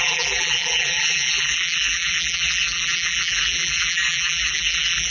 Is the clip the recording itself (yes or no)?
no